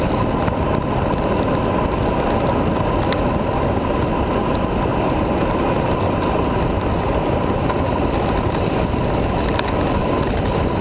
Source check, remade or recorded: recorded